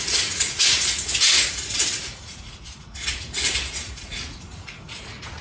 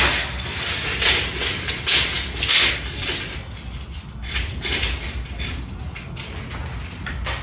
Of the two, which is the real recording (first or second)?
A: second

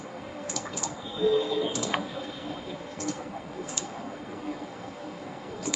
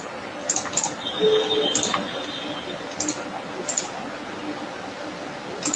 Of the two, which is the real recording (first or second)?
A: second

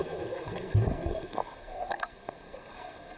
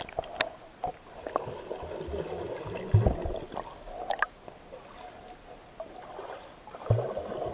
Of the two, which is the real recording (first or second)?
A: second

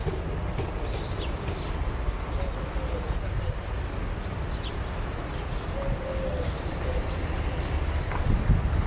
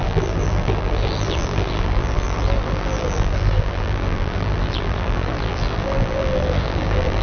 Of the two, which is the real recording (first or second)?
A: first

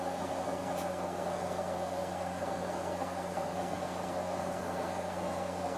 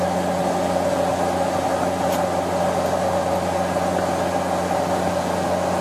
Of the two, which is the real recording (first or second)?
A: second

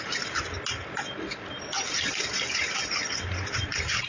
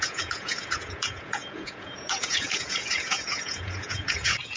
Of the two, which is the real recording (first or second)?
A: first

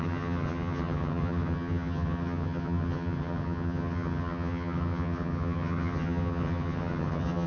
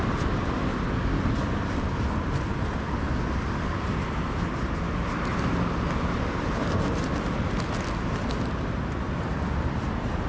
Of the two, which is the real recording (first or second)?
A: second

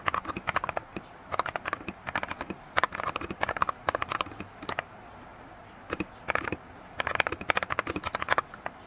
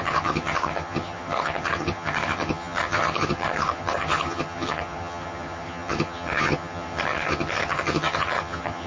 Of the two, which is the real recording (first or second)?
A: first